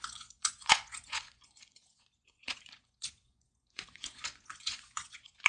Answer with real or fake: fake